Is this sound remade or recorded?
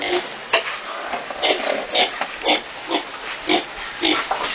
recorded